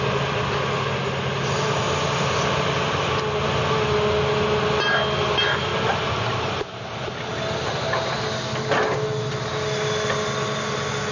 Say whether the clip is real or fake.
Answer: real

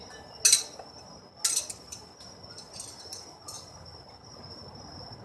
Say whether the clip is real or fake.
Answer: real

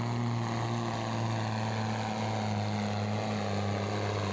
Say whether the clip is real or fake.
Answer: real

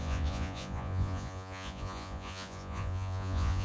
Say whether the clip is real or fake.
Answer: fake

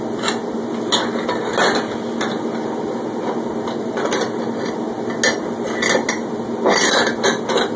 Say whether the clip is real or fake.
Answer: real